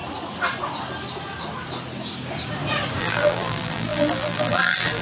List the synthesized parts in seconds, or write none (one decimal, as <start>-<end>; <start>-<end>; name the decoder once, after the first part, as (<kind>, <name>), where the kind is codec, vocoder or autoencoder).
3.0-5.0 (vocoder, BigVGAN v2)